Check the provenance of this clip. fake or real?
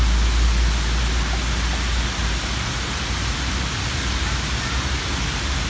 real